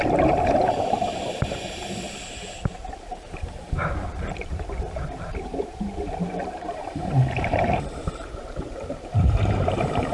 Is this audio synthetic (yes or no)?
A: yes